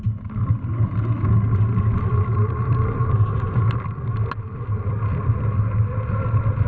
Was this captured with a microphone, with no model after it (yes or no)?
yes